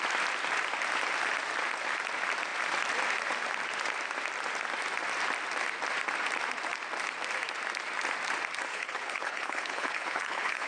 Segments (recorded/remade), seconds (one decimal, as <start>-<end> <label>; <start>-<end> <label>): 0.0-8.7 recorded; 8.7-10.7 remade